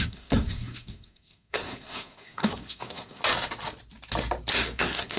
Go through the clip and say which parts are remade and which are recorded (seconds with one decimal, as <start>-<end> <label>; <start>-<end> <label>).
0.0-3.2 remade; 3.2-4.5 recorded; 4.5-5.2 remade